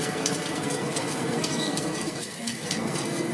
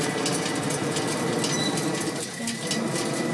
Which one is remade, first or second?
first